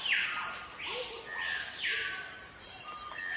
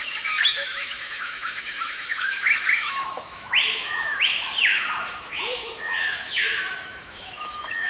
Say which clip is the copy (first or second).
second